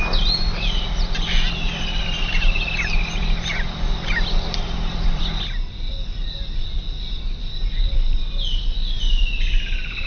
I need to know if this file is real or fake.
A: real